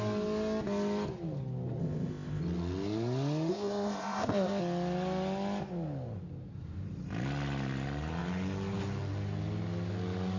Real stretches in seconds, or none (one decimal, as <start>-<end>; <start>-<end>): 0.0-1.8; 2.4-3.5; 4.6-10.4